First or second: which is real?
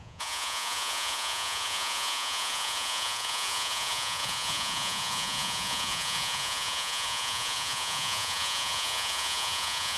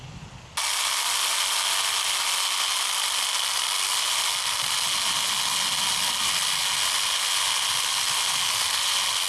second